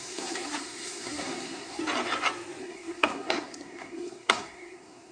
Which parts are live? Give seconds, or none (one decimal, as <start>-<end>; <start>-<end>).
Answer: 1.8-2.6